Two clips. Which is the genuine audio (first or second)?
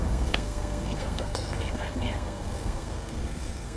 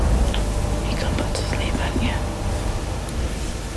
second